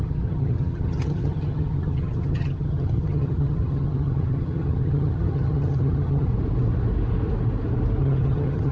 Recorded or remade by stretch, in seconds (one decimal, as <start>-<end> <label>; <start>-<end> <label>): 0.0-6.3 remade; 6.3-8.0 recorded; 8.0-8.7 remade